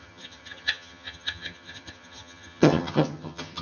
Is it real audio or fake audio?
fake